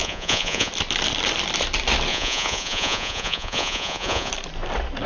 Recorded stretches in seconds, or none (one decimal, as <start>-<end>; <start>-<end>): 0.7-2.1; 4.3-5.1

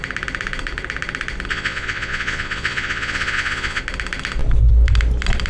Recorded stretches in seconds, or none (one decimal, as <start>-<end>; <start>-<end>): 0.0-1.5; 3.8-5.5